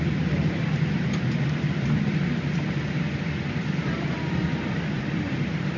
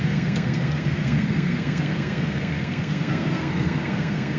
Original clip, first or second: first